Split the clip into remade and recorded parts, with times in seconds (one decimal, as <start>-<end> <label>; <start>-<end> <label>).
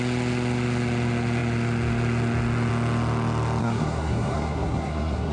0.0-3.6 recorded; 3.6-5.3 remade